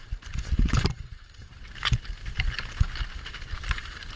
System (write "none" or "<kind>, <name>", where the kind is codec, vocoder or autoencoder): none